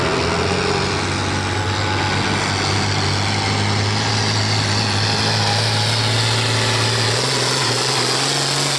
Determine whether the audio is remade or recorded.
recorded